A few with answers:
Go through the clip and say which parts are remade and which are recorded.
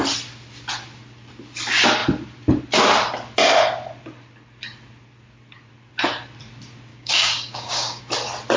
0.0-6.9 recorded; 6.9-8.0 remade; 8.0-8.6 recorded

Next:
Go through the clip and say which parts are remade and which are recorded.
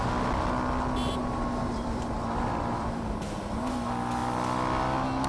0.0-1.2 recorded; 1.2-3.7 remade; 3.7-5.3 recorded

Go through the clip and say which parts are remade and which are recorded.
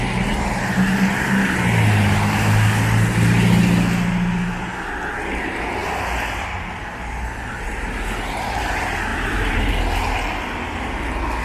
0.0-5.8 recorded; 5.8-8.6 remade; 8.6-9.1 recorded; 9.1-9.7 remade; 9.7-11.4 recorded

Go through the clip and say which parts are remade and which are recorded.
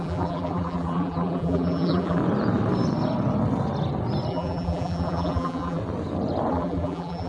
0.0-2.2 remade; 2.2-4.3 recorded; 4.3-5.8 remade; 5.8-6.5 recorded; 6.5-7.3 remade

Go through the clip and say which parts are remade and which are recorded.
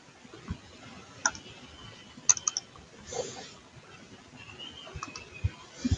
0.0-6.0 recorded